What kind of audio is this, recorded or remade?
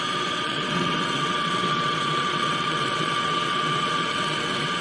remade